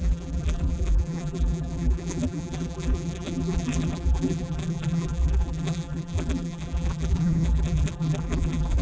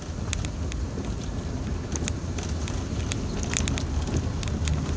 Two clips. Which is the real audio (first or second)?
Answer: second